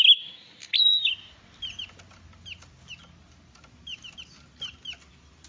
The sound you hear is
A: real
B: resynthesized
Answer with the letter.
A